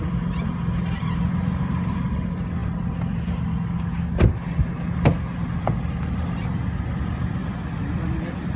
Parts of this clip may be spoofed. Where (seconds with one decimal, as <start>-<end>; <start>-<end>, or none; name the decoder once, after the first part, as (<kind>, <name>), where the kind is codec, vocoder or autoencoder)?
none